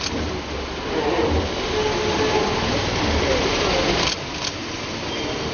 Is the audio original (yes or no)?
yes